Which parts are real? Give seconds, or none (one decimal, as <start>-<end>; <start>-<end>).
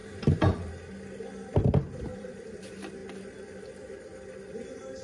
0.7-2.1; 2.6-5.0